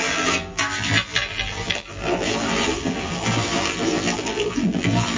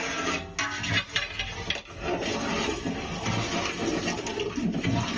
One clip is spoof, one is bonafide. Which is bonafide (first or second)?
second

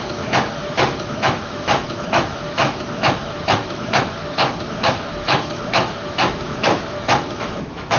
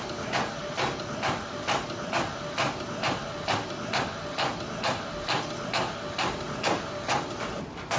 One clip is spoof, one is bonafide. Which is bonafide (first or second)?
second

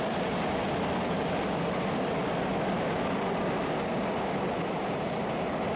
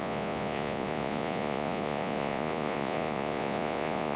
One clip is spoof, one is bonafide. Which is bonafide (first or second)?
first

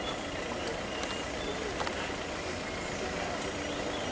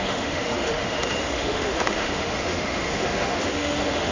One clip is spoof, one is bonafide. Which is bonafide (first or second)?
first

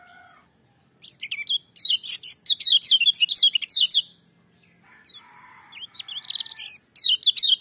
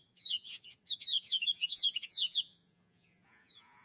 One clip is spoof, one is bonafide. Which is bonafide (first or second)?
first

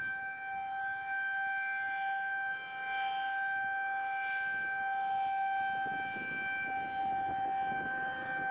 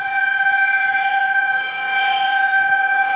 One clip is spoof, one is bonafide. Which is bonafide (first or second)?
first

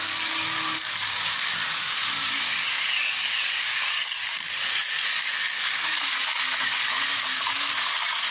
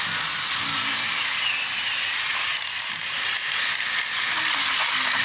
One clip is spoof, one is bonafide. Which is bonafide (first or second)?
second